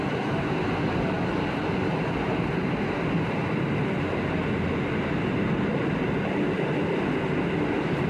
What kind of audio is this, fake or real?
real